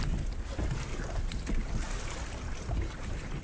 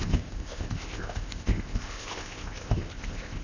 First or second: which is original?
first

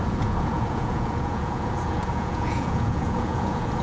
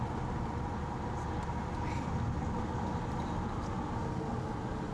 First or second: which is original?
second